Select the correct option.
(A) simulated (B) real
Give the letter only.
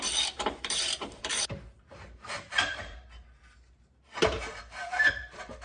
A